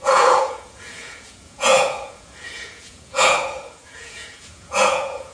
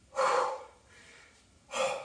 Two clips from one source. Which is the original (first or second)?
second